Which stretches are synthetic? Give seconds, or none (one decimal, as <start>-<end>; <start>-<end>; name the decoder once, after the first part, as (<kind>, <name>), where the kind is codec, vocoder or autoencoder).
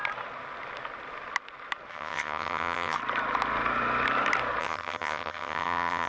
1.9-3.0 (vocoder, HiFi-GAN); 4.6-6.1